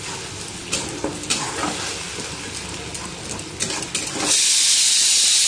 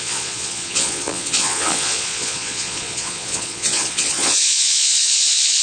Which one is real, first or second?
first